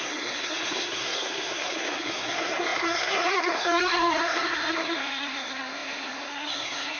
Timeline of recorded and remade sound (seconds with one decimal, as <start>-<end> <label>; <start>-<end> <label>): 0.0-7.0 remade